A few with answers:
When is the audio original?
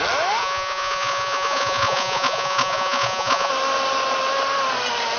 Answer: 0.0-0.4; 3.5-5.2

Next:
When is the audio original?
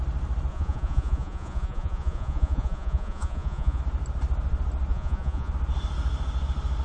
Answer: 0.0-0.5; 3.8-4.9; 5.5-6.8